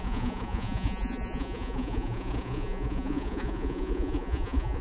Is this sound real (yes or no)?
no